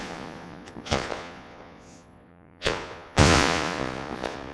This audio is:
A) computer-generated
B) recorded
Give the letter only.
A